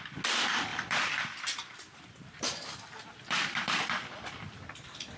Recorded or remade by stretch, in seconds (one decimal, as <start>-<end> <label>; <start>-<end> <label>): 0.0-0.7 recorded; 0.7-3.8 remade; 3.8-5.2 recorded